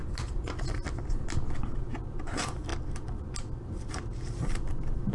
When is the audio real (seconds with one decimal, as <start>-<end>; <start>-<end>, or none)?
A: 0.0-2.0; 2.7-3.6